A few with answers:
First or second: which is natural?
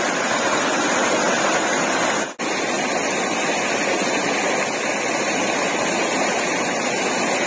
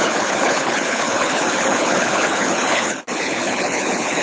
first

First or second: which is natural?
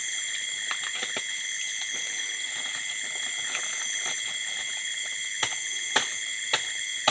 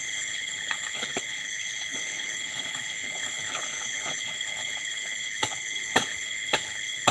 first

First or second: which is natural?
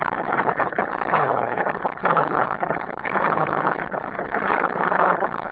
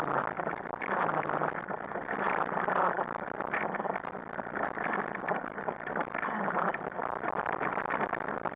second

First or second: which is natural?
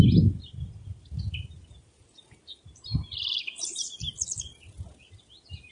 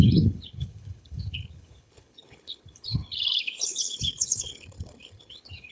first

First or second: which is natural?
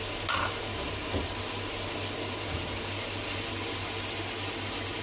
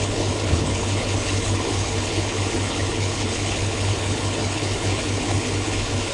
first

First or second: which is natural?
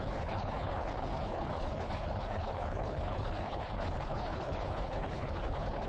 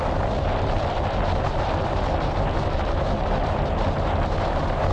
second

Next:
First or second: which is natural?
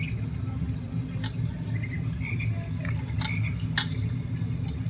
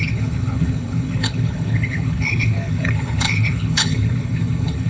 first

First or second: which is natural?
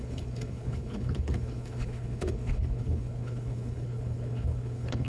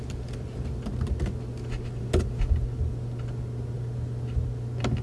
second